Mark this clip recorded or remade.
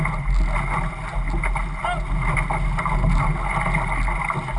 recorded